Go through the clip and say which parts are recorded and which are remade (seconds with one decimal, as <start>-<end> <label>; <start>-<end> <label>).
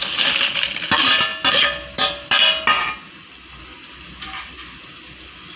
0.0-5.6 recorded